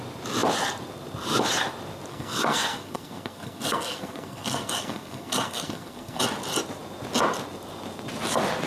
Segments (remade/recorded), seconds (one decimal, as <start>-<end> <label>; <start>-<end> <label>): 0.0-2.1 recorded; 2.1-6.2 remade; 6.2-8.7 recorded